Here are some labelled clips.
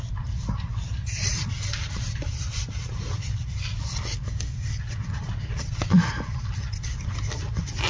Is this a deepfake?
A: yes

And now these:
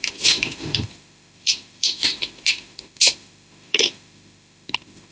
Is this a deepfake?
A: yes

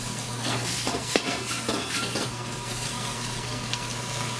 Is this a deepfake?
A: yes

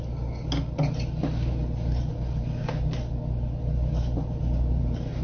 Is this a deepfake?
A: no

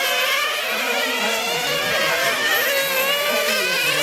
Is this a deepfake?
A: yes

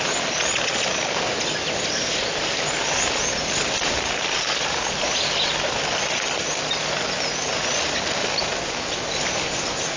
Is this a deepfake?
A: no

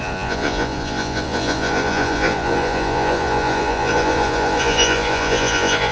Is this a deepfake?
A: yes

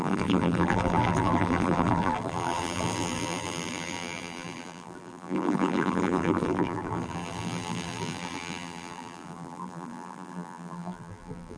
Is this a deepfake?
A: yes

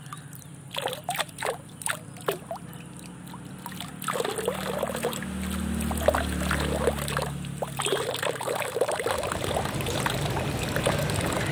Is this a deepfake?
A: no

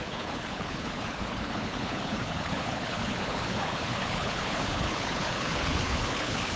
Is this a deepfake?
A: yes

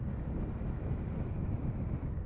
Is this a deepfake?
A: no